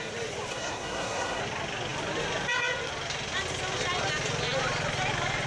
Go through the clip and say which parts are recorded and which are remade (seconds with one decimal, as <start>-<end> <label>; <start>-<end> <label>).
0.0-0.5 recorded; 0.5-1.4 remade; 1.4-5.5 recorded